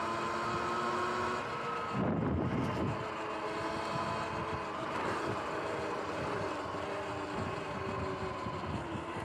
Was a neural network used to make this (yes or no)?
no